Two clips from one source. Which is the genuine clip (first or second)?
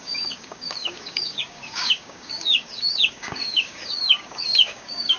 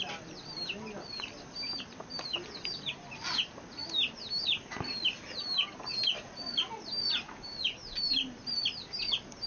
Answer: second